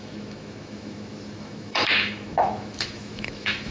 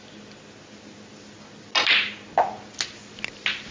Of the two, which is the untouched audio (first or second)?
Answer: second